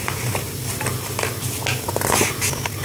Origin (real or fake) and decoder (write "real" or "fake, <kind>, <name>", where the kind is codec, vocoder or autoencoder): real